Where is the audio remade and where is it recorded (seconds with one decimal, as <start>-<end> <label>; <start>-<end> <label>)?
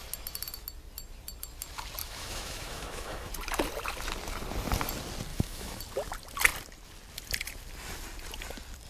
0.0-2.0 recorded; 2.0-3.3 remade; 3.3-5.3 recorded; 5.3-5.8 remade; 5.8-8.9 recorded